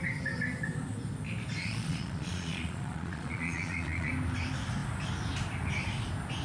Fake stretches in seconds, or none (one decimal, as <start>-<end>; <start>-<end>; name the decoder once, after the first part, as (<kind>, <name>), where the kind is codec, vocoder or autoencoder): 1.6-4.1 (vocoder, Vocos)